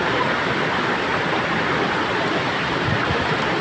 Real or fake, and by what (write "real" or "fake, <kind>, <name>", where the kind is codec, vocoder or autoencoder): real